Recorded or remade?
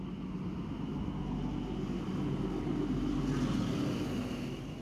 recorded